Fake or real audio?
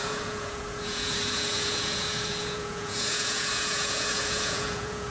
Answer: fake